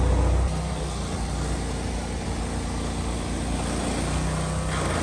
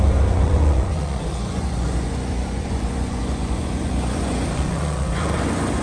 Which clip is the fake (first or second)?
second